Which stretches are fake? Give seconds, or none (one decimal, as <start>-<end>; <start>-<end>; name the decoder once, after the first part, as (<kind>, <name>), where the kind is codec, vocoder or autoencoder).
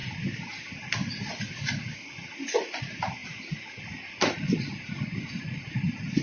2.8-6.2 (vocoder, BigVGAN v2)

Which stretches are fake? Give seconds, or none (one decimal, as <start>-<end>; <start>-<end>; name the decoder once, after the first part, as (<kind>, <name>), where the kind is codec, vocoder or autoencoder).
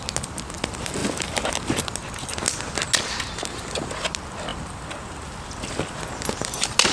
none